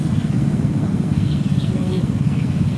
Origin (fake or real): fake